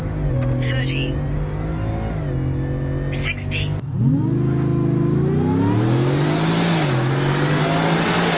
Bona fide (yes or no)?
yes